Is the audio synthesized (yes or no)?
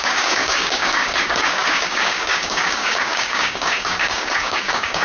yes